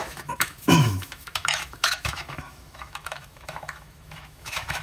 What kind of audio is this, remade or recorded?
remade